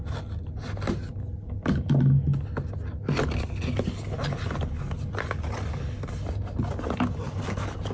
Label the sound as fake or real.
real